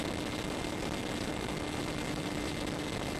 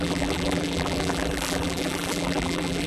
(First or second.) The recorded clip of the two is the first